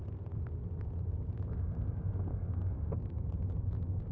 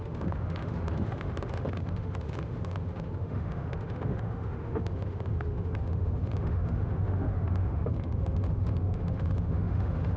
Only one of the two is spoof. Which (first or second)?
second